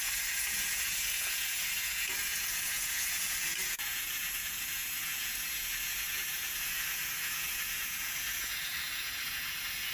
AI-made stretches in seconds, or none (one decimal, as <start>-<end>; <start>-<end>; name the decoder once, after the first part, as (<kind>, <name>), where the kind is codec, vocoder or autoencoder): 0.0-9.9 (vocoder, Vocos)